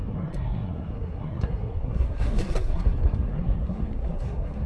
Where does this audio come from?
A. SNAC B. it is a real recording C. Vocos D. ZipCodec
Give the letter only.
A